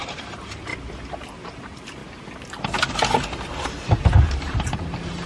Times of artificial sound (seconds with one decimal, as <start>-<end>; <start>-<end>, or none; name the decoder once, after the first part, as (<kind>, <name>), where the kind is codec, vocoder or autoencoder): 0.0-0.7 (vocoder, BigVGAN v2); 1.3-2.0; 3.7-5.3